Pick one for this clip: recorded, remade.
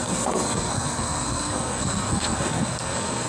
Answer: remade